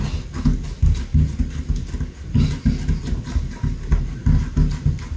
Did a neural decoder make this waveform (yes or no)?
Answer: no